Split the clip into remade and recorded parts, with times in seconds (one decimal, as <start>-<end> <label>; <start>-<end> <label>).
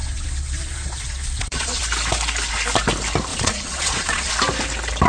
0.0-1.8 remade; 1.8-3.3 recorded; 3.3-4.3 remade; 4.3-5.1 recorded